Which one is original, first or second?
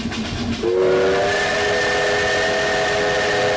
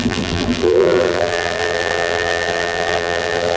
first